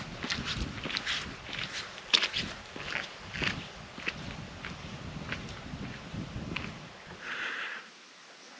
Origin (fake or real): real